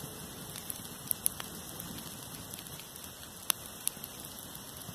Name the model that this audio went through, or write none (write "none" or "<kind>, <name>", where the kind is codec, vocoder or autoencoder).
none